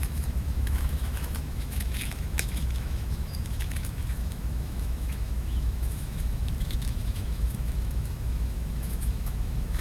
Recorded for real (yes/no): no